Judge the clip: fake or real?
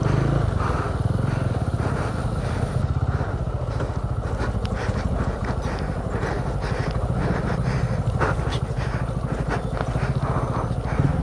real